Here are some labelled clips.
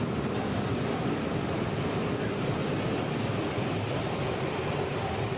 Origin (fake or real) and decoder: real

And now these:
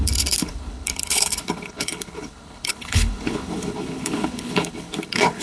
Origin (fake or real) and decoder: fake, codec, HILCodec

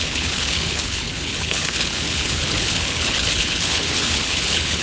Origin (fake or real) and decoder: fake, codec, HILCodec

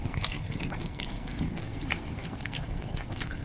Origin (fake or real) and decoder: fake, codec, SNAC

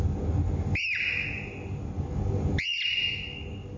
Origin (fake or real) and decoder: real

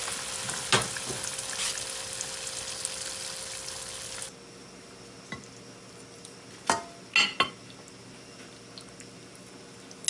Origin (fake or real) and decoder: real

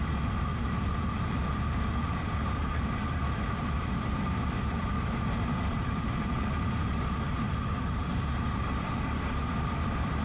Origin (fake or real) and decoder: fake, vocoder, BigVGAN v2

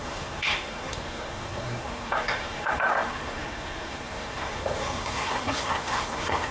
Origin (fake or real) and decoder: fake, codec, SNAC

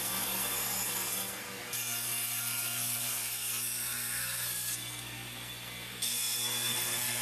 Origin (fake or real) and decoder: fake, codec, SNAC